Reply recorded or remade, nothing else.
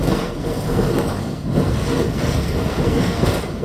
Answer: remade